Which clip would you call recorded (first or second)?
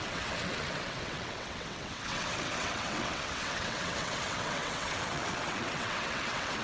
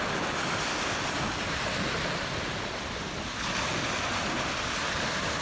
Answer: second